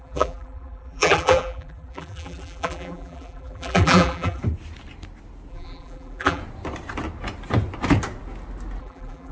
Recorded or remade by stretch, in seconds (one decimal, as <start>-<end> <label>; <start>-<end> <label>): 0.0-4.4 remade; 4.4-5.5 recorded; 5.5-6.4 remade; 6.4-8.8 recorded; 8.8-9.3 remade